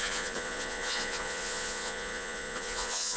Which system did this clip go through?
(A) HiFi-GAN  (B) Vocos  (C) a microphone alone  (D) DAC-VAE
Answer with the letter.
B